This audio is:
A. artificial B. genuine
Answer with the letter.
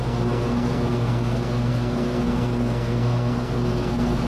A